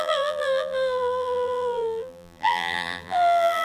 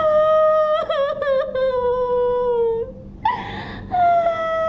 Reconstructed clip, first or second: first